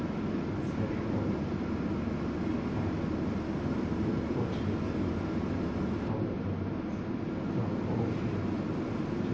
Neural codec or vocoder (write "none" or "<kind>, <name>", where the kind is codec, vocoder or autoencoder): none